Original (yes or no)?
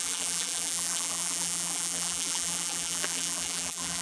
no